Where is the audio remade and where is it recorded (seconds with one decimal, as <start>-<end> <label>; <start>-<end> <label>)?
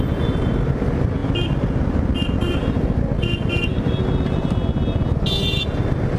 0.0-6.2 recorded